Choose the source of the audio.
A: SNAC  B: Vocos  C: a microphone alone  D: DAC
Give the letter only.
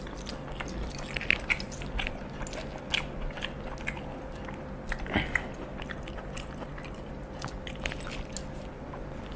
C